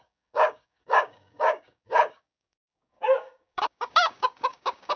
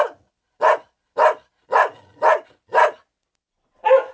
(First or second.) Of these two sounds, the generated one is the first